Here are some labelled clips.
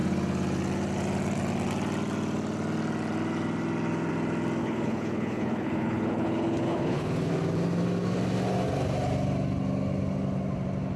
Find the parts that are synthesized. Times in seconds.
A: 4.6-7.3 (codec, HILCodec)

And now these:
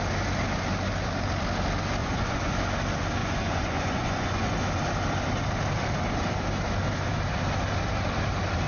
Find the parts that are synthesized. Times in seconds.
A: 2.0-2.5 (vocoder, Vocos); 3.2-4.5

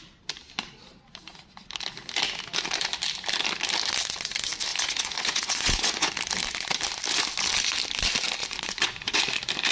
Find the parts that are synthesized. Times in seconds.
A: 4.7-6.1 (vocoder, Vocos); 8.4-9.2

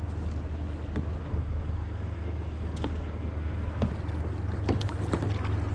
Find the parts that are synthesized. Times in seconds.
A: 1.2-3.9 (codec, SNAC)

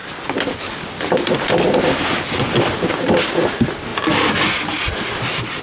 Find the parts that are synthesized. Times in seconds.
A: none